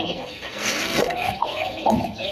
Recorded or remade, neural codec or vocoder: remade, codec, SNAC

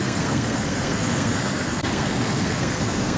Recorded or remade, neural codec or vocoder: remade, codec, SNAC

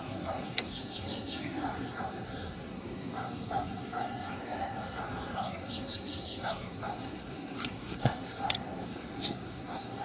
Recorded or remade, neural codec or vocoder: remade, codec, SNAC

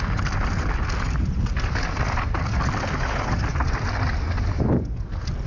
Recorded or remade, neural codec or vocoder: recorded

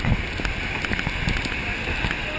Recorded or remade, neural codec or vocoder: recorded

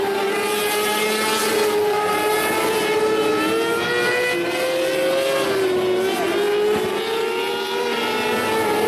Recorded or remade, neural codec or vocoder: recorded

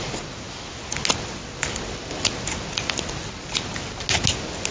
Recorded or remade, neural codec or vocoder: recorded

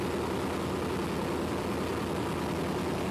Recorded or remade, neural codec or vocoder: recorded